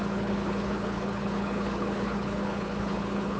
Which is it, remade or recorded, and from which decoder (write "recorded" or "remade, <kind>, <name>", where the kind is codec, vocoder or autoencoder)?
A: remade, codec, HILCodec